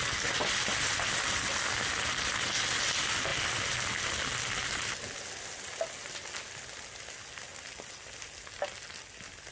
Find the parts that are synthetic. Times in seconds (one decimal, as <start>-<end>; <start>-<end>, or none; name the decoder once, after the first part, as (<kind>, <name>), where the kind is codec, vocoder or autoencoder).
none